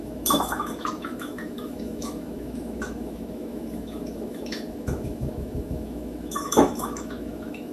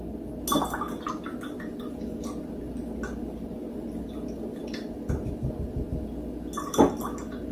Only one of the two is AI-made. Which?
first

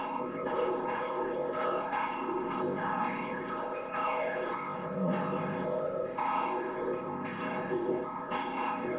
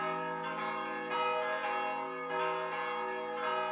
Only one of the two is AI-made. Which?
first